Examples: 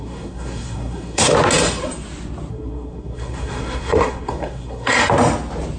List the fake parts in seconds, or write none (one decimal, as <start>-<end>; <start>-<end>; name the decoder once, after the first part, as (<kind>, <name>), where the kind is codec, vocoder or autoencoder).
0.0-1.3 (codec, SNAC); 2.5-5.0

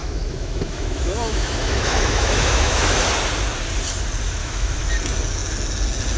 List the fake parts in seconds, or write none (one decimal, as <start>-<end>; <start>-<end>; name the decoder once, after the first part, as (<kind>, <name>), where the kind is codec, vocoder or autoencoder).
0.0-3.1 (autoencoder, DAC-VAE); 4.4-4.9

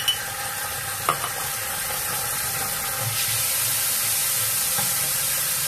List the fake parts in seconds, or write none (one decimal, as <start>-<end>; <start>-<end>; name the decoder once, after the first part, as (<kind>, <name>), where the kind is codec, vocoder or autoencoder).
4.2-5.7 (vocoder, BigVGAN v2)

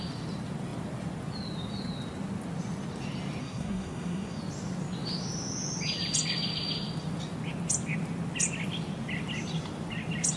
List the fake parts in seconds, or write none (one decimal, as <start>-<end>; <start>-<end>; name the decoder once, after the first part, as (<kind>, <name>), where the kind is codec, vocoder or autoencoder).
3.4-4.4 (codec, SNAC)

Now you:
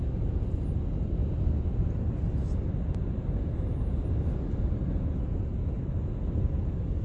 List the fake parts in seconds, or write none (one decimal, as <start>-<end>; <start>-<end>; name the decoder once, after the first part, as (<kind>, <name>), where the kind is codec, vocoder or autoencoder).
none

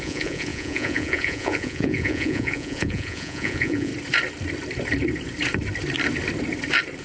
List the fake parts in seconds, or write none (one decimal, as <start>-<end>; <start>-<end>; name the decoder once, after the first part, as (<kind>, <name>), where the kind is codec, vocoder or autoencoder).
0.0-3.9 (vocoder, Vocos)